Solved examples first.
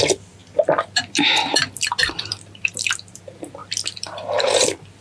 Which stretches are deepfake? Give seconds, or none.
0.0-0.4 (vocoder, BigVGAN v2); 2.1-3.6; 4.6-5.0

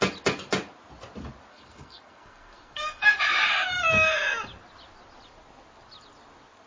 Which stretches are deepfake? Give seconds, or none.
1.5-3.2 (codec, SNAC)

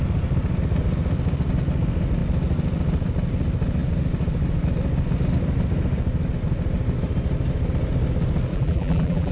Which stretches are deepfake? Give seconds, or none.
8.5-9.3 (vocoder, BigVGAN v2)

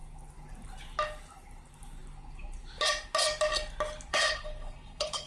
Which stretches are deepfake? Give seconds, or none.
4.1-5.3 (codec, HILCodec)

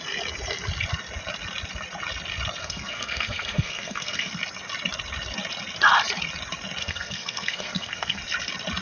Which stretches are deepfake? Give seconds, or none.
2.6-4.3 (codec, SNAC); 6.8-8.2

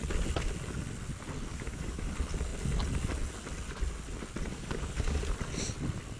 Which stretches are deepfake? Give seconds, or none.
1.5-2.1 (codec, DAC); 4.5-5.2